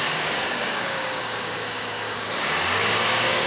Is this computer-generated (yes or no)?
yes